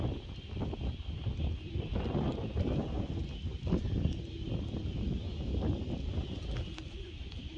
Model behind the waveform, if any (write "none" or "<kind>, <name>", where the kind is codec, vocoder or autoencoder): none